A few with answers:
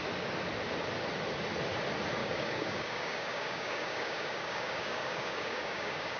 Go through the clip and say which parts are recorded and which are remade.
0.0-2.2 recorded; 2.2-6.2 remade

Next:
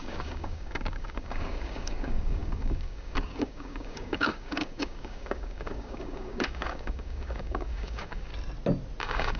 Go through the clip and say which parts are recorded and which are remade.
0.0-8.3 remade; 8.3-9.0 recorded; 9.0-9.4 remade

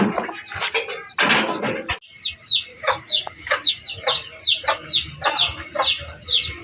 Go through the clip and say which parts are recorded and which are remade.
0.0-2.7 recorded; 2.7-3.7 remade; 3.7-6.6 recorded

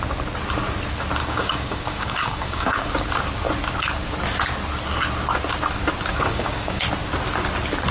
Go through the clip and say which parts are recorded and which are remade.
0.0-1.2 recorded; 1.2-2.9 remade; 2.9-6.1 recorded; 6.1-6.8 remade; 6.8-7.9 recorded